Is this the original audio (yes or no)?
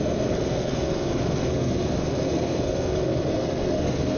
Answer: no